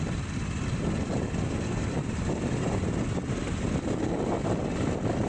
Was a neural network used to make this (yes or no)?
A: no